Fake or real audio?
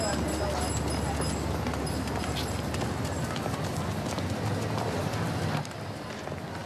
real